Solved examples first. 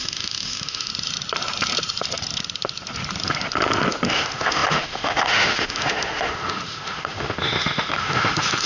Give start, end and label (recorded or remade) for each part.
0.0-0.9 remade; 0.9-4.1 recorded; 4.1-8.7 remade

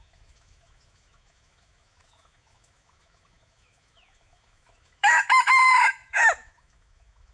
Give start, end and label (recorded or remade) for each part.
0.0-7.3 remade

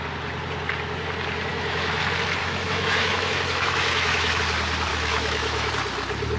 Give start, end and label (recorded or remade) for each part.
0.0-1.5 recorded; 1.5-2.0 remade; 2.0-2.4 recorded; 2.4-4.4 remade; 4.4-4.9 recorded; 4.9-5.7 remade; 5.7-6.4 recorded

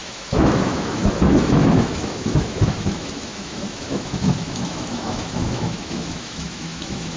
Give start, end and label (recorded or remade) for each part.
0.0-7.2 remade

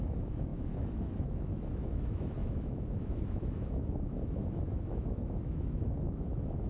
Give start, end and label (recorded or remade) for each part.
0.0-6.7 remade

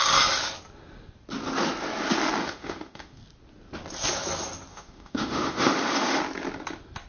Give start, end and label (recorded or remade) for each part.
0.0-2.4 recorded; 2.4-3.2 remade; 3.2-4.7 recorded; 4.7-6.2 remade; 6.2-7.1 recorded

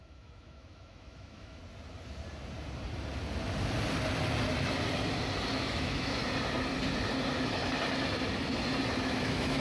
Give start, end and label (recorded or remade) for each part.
0.0-1.6 remade; 1.6-5.5 recorded; 5.5-6.2 remade; 6.2-9.0 recorded; 9.0-9.6 remade

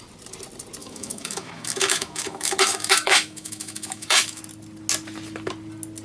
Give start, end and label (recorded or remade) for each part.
0.0-0.8 recorded; 0.8-4.4 remade; 4.4-6.0 recorded